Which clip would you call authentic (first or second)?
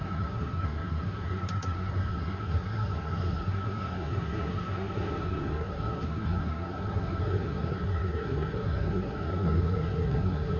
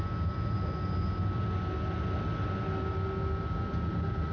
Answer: second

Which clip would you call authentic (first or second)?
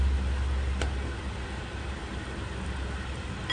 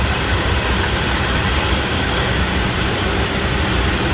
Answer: first